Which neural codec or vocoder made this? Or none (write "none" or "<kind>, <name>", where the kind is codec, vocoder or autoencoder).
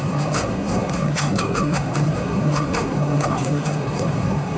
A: codec, SNAC